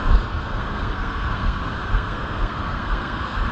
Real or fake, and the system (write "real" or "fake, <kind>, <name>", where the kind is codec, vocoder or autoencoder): fake, codec, SNAC